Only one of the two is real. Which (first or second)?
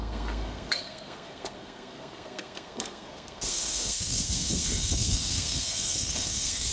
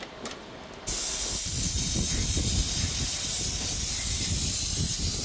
second